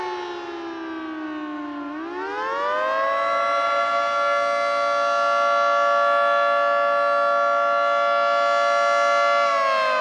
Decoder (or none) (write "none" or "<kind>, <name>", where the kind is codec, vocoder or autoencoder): none